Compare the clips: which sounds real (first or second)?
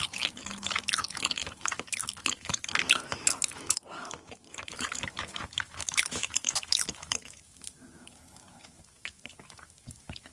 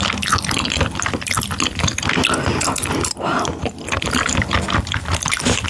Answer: second